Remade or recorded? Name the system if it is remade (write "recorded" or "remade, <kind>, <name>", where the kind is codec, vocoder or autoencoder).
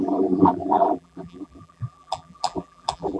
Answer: remade, vocoder, BigVGAN v2